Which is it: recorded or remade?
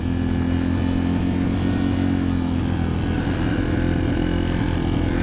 recorded